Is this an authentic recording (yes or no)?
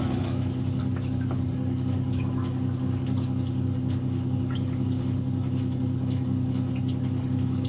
no